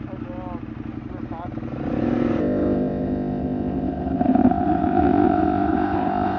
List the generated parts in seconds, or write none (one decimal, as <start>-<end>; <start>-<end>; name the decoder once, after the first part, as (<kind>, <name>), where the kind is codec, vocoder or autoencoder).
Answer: 2.4-6.4 (codec, ZipCodec)